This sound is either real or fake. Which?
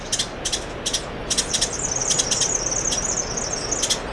real